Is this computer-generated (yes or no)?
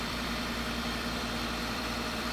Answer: yes